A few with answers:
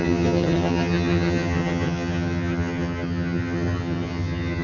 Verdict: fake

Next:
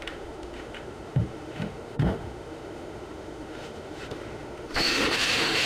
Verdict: fake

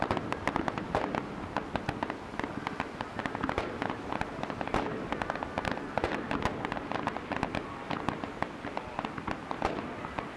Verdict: real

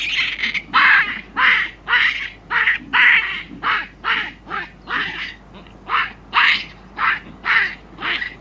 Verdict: real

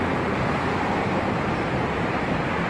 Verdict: real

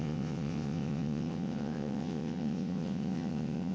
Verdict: fake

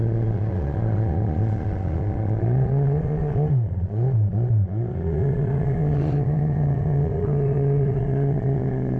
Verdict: fake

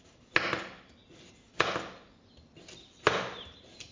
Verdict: real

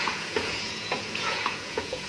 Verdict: fake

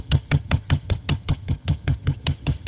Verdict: fake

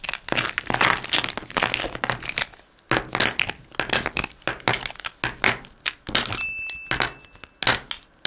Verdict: real